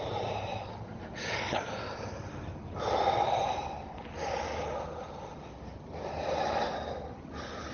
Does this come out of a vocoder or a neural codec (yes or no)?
no